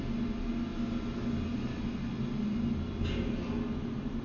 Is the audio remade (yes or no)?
no